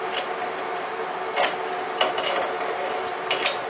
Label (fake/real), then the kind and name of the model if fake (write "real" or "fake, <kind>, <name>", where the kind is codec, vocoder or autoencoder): real